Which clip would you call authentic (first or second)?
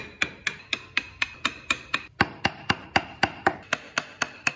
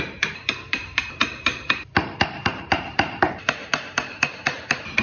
first